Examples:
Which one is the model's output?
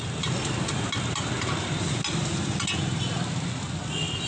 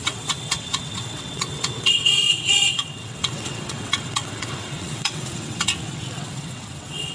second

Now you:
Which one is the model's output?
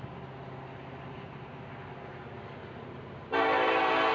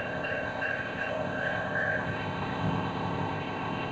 second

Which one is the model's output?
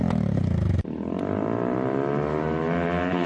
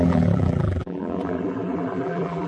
second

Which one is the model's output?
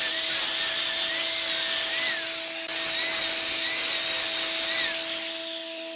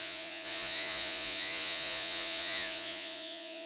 second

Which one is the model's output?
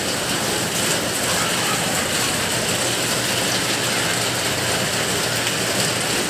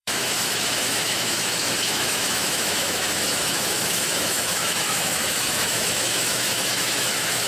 second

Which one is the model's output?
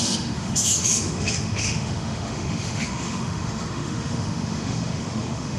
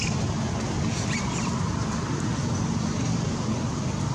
first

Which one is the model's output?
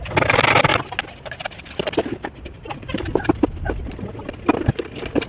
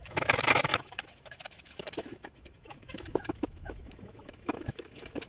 second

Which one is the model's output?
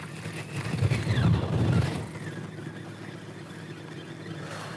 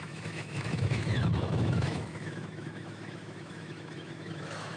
second